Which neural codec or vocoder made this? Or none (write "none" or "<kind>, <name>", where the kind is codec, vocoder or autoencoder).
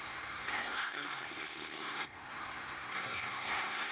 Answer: codec, SNAC